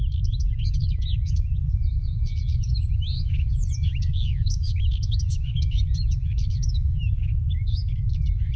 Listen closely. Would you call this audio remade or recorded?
remade